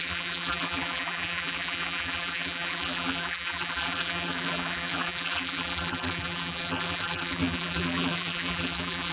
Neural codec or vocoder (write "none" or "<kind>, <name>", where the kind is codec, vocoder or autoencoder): vocoder, BigVGAN v2